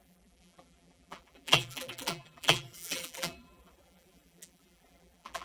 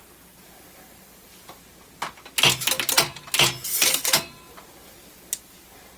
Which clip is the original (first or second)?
second